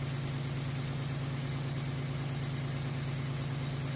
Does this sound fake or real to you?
real